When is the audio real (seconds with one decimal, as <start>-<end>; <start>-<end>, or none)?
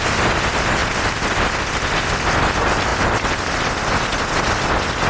0.0-0.8; 1.9-2.9; 3.4-5.1